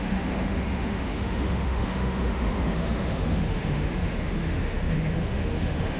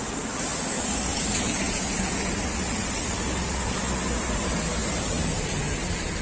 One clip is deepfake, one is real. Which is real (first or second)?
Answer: second